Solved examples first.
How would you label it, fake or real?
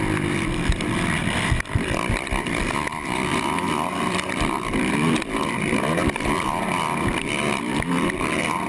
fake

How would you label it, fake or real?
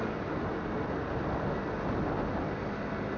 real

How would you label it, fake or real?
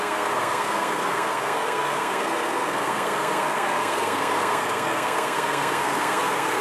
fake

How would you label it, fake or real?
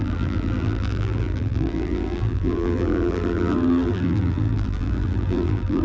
fake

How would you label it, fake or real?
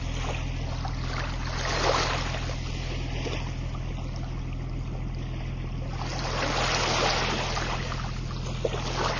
real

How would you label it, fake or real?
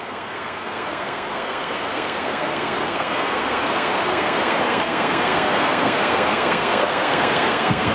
fake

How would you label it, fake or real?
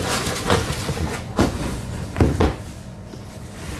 fake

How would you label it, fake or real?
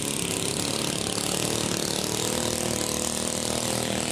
real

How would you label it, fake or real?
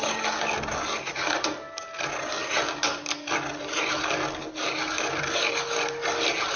real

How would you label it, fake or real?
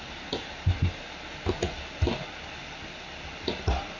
real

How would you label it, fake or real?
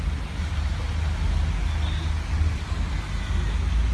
real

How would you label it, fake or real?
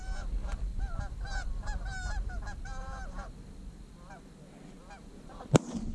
real